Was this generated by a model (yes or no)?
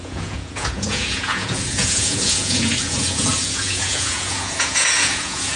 yes